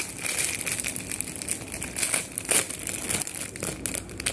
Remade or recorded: recorded